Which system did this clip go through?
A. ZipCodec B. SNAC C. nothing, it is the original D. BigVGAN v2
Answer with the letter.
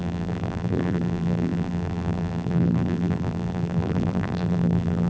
D